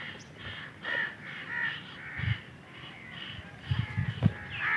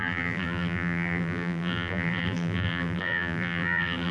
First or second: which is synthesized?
second